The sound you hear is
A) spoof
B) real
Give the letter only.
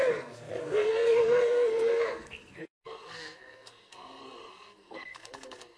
A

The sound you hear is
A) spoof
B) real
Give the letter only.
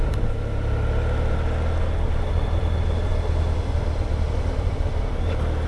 B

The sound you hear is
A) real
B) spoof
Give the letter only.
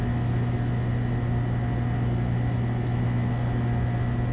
A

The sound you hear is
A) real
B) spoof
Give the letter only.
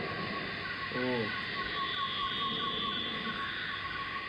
A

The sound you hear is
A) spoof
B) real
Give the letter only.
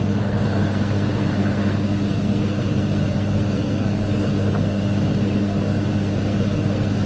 A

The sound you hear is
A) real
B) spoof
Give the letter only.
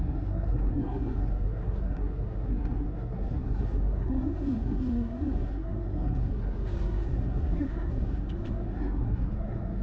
B